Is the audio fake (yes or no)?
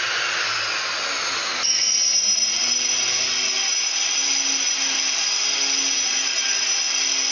no